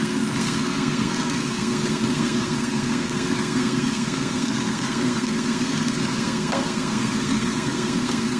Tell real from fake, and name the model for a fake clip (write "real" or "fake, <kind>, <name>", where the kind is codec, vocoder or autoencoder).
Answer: fake, codec, SNAC